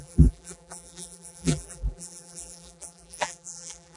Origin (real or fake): fake